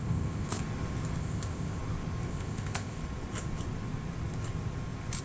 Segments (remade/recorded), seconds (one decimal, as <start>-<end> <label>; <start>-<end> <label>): 0.0-0.6 remade; 0.6-1.2 recorded; 1.2-1.8 remade; 1.8-2.3 recorded; 2.3-3.0 remade; 3.0-5.2 recorded